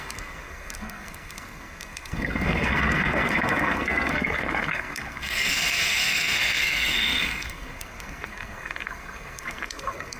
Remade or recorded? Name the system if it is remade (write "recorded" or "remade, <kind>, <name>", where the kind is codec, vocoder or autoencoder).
remade, codec, SNAC